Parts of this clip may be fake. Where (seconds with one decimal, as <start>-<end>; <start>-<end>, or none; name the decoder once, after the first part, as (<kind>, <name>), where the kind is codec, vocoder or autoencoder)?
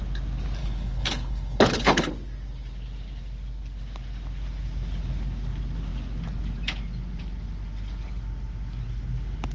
0.6-2.1 (codec, HILCodec)